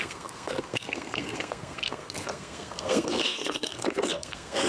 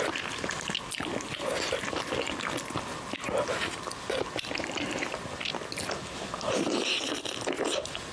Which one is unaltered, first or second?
second